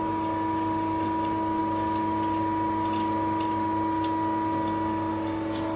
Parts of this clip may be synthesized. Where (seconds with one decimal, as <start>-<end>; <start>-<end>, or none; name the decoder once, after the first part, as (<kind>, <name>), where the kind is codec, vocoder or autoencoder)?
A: none